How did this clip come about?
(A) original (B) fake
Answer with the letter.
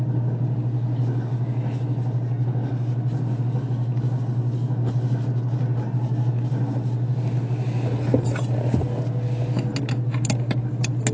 A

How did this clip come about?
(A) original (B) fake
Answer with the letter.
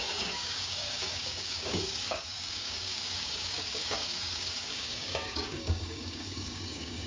B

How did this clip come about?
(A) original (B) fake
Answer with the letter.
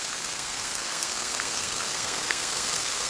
B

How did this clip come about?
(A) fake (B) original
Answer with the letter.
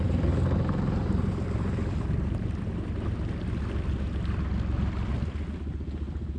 B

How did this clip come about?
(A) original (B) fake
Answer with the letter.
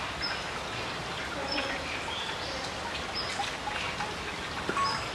A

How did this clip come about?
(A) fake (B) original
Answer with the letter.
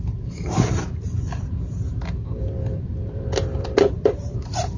A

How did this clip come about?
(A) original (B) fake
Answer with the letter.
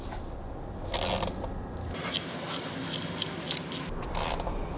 A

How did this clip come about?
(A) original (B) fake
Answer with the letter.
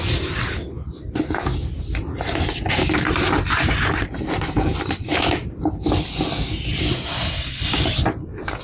A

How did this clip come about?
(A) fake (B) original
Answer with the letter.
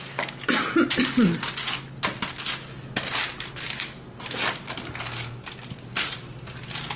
B